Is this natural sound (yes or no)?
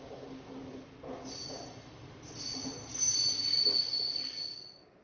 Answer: yes